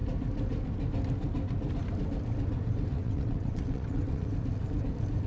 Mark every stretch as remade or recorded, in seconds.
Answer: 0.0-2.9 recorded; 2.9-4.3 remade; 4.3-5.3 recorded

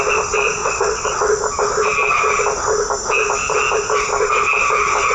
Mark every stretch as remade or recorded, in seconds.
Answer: 0.0-0.6 recorded; 0.6-1.4 remade; 1.4-5.1 recorded

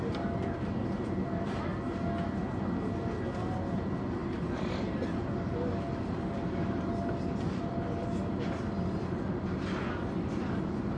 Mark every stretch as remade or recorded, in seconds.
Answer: 0.0-11.0 recorded

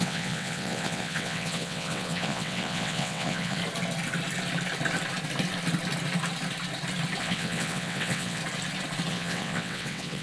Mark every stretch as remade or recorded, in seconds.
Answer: 0.0-3.6 remade; 3.6-7.2 recorded; 7.2-8.4 remade; 8.4-9.1 recorded; 9.1-10.2 remade